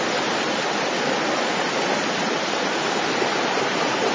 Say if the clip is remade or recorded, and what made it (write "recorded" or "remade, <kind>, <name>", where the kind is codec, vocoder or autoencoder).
recorded